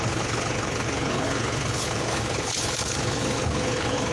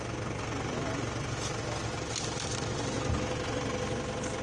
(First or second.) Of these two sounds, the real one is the second